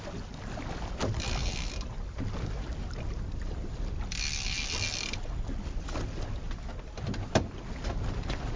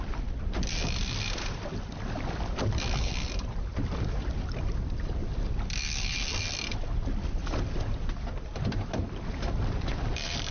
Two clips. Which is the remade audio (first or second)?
second